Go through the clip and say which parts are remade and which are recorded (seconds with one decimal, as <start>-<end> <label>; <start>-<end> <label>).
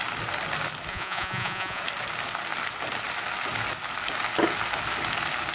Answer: 0.0-0.9 recorded; 0.9-1.8 remade; 1.8-5.5 recorded